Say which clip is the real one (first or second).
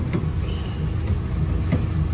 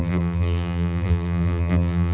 first